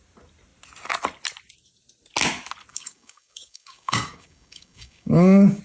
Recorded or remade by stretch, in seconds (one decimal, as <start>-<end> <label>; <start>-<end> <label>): 0.0-2.7 recorded; 2.7-5.6 remade

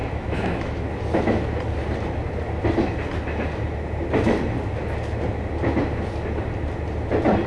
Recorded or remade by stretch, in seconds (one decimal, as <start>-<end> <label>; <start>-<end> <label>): 0.0-0.9 remade; 0.9-7.5 recorded

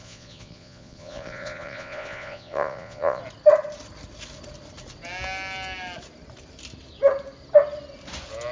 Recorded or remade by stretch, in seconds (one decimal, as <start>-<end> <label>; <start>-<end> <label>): 0.0-3.2 remade; 3.2-8.5 recorded

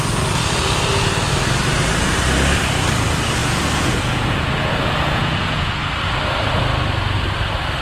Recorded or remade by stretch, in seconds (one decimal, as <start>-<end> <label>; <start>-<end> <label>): 0.0-3.4 recorded; 3.4-5.7 remade; 5.7-7.8 recorded

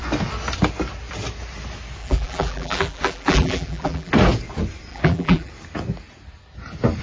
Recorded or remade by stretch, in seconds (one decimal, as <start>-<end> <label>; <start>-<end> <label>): 0.0-2.0 recorded; 2.0-4.1 remade; 4.1-4.9 recorded; 4.9-5.5 remade; 5.5-7.0 recorded

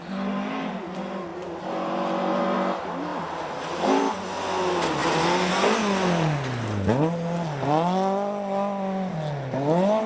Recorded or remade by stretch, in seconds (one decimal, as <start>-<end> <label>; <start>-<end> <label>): 0.0-10.1 recorded

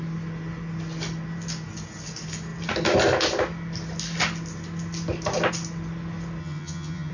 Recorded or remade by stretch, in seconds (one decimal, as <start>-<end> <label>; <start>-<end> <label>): 0.0-6.4 recorded; 6.4-7.1 remade